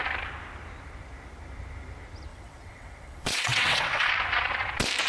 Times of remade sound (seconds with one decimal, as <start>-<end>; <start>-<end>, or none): 2.3-4.1